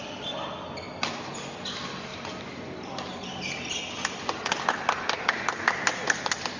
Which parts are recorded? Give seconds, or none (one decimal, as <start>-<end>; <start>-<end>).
0.0-6.6